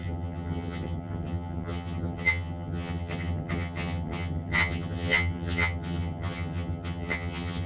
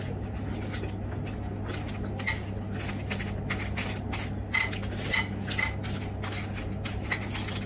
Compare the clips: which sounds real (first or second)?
second